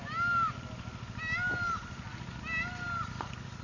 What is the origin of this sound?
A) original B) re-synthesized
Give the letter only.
A